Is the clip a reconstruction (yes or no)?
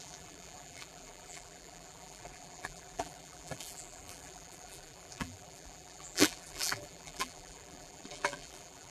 yes